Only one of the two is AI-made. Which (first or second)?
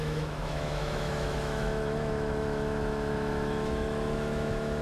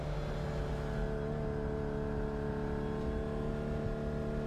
first